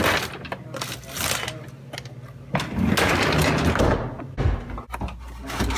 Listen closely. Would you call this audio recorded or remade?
recorded